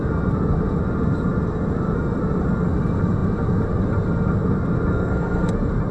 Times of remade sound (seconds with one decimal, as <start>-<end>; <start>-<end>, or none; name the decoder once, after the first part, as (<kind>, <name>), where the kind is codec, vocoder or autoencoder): 4.9-5.5 (codec, SNAC)